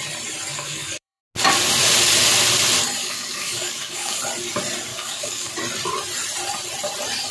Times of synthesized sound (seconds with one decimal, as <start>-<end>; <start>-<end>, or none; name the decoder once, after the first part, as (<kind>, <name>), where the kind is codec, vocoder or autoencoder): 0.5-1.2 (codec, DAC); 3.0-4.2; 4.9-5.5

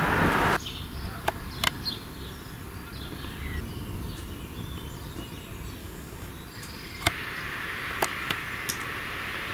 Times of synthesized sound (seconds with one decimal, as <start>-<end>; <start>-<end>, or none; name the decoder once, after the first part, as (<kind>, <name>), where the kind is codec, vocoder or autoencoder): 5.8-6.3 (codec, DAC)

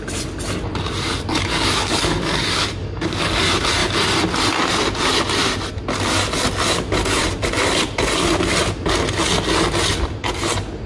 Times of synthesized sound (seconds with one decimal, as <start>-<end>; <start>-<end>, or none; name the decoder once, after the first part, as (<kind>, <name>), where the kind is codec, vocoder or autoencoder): 1.3-3.4 (codec, DAC)

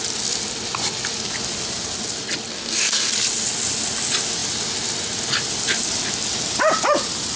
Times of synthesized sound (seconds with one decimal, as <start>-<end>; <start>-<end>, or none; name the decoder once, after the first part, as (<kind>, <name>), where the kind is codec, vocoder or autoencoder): 2.5-3.1 (codec, DAC)

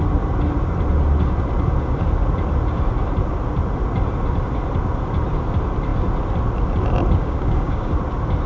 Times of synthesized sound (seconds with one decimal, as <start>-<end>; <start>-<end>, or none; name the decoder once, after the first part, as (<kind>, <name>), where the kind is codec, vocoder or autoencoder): 7.2-8.0 (codec, DAC)

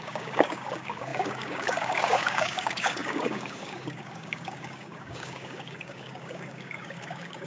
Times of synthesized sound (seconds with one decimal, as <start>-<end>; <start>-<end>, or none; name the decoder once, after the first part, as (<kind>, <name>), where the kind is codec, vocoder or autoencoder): 0.0-7.5 (codec, DAC)

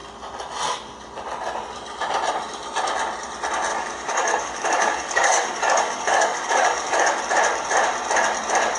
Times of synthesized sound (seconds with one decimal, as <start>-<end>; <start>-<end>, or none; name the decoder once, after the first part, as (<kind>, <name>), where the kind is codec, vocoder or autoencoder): 3.7-7.2 (codec, DAC)

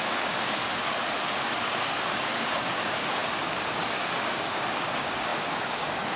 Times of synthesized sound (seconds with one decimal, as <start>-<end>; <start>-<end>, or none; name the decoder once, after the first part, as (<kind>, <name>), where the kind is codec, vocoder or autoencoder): 0.0-0.6 (codec, DAC); 1.6-6.2